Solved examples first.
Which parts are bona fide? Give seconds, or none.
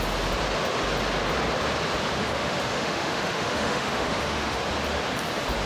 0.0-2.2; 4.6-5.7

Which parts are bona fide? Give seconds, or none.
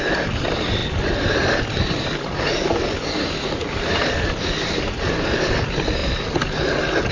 0.0-7.1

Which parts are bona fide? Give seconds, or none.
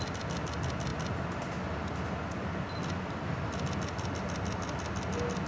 0.0-5.5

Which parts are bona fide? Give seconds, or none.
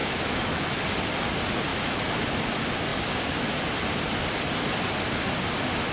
0.8-1.7; 2.3-5.9